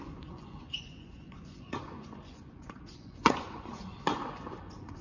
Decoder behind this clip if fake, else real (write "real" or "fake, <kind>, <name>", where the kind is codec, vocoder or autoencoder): fake, vocoder, Vocos